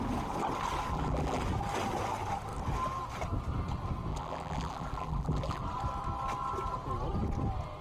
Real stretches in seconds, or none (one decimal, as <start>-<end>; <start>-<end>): 0.0-0.9; 1.4-4.1; 5.6-7.8